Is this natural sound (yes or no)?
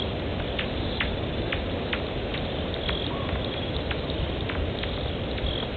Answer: yes